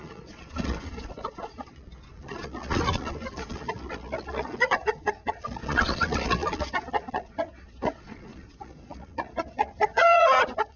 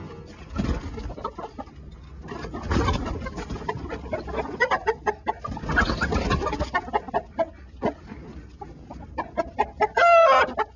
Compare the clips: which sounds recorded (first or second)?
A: second